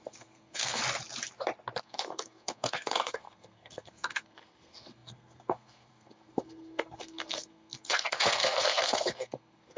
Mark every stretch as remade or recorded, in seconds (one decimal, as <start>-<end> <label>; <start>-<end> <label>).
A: 0.0-0.8 remade; 0.8-1.8 recorded; 1.8-9.8 remade